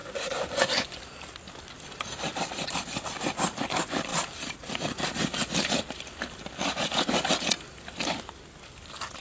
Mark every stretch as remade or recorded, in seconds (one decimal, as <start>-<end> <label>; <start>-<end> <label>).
0.0-1.0 remade; 1.0-9.2 recorded